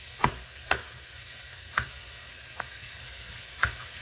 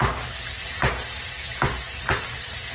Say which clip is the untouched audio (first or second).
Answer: second